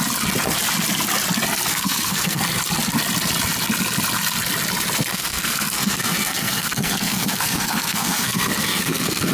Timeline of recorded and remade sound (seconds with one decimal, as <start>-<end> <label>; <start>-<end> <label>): 0.0-1.7 recorded; 1.7-2.4 remade; 2.4-5.1 recorded; 5.1-9.3 remade